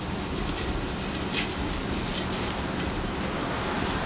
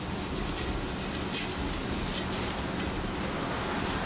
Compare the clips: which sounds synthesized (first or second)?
first